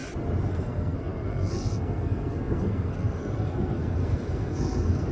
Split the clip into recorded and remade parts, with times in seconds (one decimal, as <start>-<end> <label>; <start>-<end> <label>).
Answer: 0.0-0.5 recorded; 0.5-5.1 remade